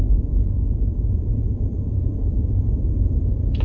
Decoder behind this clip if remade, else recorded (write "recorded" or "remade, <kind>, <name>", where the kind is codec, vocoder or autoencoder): remade, vocoder, BigVGAN v2